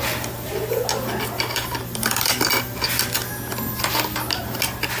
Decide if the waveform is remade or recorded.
recorded